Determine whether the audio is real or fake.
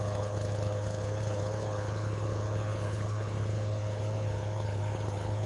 fake